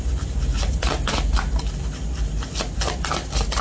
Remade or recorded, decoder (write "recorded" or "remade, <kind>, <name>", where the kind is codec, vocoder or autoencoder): recorded